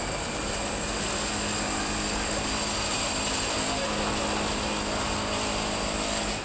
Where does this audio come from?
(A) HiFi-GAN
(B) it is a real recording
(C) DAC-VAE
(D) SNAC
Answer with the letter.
B